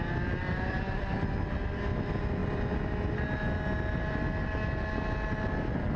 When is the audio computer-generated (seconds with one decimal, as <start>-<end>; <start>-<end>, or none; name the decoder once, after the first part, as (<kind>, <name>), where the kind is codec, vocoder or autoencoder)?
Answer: none

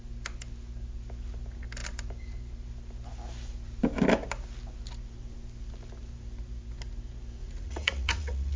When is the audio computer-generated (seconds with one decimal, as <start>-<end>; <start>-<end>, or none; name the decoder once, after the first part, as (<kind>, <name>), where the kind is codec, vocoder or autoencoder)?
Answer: 7.4-8.6 (vocoder, Vocos)

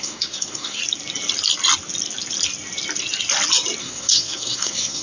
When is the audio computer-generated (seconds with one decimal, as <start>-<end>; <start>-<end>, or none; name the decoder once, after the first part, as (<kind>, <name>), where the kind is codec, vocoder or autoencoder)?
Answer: 0.0-0.8 (codec, SNAC); 3.8-5.0